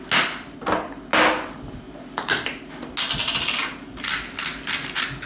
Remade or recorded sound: recorded